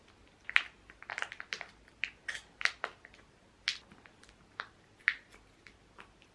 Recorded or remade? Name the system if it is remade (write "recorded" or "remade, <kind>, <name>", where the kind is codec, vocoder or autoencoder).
recorded